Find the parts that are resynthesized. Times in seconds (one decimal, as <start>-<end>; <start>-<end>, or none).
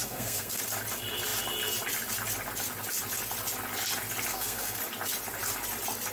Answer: 0.0-0.6; 4.3-4.8